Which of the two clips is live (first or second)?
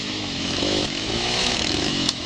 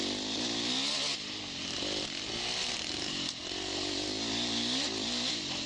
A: second